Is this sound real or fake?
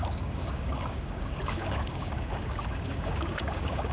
fake